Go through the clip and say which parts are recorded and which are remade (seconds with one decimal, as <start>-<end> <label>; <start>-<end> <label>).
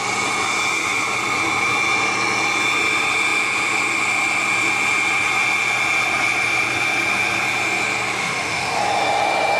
0.0-8.2 recorded; 8.2-8.8 remade; 8.8-9.6 recorded